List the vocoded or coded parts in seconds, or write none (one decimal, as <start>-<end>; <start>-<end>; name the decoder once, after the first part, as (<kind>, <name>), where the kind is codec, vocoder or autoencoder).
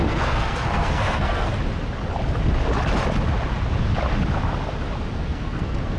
0.0-1.5 (codec, SNAC); 5.1-6.0